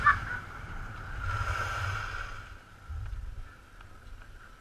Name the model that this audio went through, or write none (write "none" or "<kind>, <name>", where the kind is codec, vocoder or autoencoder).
none